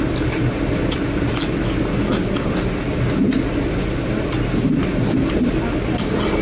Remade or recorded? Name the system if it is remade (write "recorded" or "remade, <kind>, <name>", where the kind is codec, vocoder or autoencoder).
recorded